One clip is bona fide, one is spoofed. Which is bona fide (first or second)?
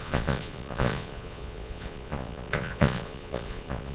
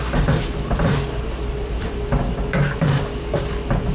second